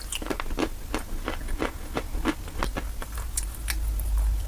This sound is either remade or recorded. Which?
recorded